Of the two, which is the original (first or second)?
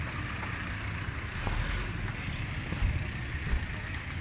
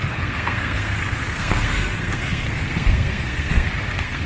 first